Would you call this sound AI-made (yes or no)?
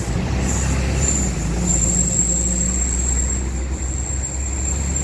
no